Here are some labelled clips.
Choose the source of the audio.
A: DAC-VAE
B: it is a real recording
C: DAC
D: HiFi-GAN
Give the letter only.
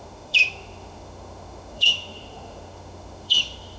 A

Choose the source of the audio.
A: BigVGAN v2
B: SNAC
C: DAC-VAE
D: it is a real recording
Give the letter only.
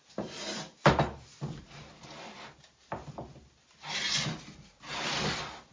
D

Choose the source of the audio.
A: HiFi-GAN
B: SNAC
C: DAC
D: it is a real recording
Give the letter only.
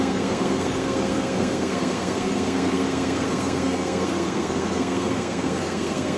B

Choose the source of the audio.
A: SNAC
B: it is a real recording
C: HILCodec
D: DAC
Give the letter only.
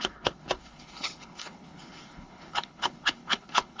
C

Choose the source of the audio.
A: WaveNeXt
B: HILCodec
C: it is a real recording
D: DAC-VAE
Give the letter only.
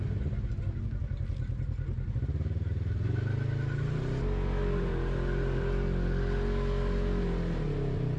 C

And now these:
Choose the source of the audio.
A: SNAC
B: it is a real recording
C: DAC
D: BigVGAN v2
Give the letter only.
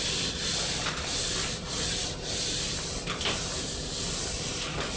D